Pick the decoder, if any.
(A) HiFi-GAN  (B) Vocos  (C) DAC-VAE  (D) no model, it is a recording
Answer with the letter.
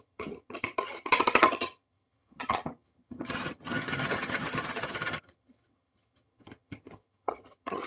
A